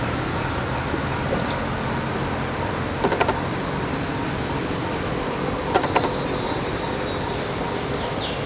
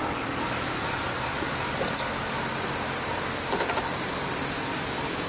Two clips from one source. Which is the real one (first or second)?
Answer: second